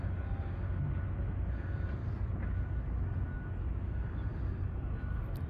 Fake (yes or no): no